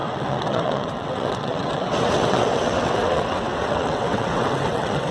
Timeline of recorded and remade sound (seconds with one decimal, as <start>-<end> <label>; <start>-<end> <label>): 0.0-5.1 remade